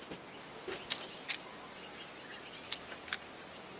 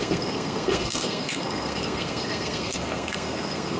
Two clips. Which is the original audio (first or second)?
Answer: first